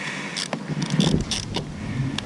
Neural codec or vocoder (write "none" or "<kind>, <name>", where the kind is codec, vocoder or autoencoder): none